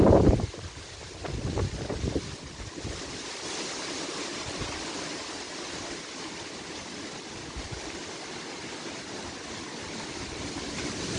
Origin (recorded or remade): recorded